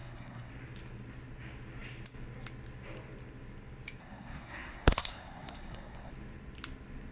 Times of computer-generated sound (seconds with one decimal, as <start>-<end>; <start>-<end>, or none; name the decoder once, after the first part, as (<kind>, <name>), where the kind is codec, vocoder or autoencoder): 0.0-0.5 (codec, SNAC); 4.0-6.1